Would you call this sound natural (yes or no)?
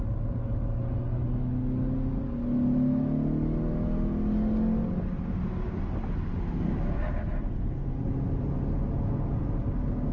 yes